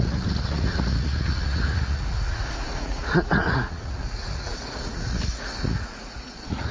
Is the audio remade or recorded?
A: remade